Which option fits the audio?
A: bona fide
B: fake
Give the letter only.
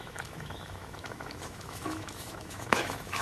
B